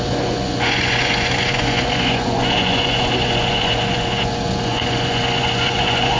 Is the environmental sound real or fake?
fake